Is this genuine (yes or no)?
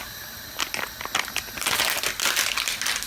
yes